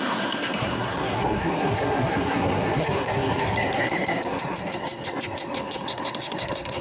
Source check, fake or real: fake